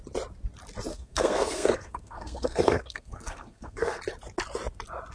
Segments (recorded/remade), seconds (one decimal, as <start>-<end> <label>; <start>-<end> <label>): 0.0-0.9 recorded; 0.9-4.0 remade; 4.0-5.1 recorded